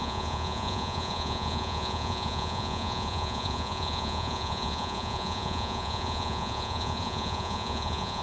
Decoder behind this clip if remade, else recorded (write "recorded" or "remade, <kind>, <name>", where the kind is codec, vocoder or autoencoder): remade, vocoder, Vocos